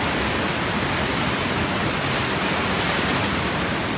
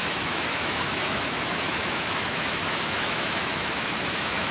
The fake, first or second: second